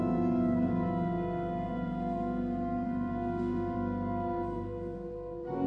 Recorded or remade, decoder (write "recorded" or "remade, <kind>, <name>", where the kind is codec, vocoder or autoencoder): remade, vocoder, BigVGAN v2